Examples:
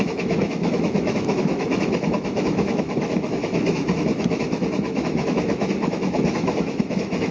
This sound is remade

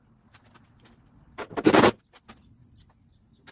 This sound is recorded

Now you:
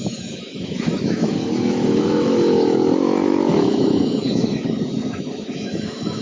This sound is remade